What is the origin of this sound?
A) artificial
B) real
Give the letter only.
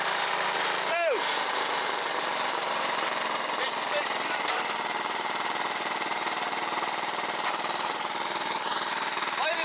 A